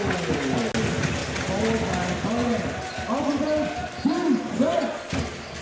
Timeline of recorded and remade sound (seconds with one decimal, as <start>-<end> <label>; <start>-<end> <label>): 0.0-3.8 recorded; 3.8-5.6 remade